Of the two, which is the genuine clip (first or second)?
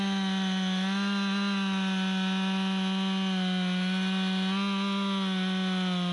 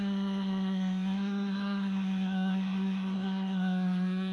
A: first